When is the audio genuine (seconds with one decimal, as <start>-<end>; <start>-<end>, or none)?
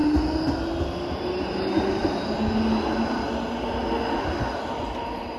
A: 0.0-5.4